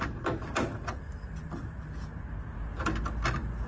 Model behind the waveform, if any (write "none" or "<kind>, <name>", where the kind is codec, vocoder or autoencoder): none